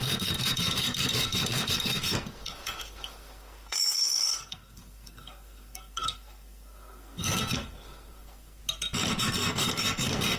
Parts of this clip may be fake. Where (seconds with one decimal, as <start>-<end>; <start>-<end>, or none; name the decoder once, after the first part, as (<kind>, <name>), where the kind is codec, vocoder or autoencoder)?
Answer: 0.0-8.6 (codec, SNAC); 9.2-10.4